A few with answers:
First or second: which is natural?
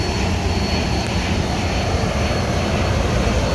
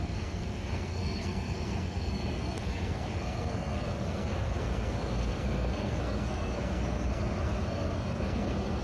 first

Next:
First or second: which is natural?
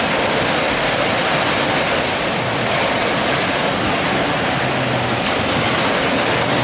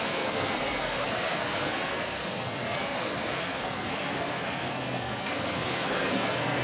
first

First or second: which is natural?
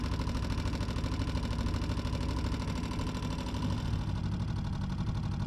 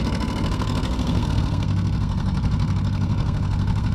first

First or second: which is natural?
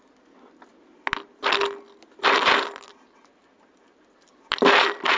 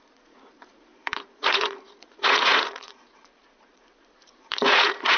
first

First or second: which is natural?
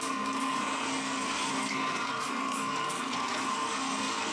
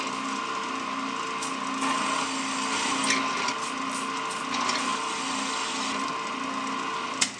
second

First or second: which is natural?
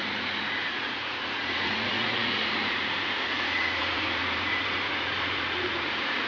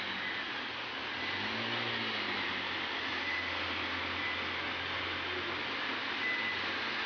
second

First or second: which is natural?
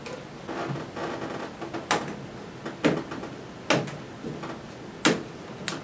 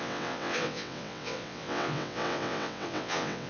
first